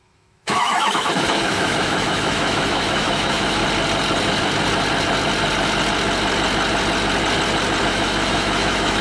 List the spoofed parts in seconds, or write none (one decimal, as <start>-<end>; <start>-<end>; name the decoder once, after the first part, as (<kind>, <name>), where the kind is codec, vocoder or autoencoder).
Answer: 0.0-3.6 (autoencoder, DAC-VAE); 7.8-9.0